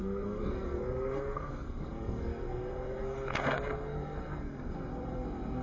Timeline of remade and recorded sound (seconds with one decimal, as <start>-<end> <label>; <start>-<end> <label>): 0.0-5.6 remade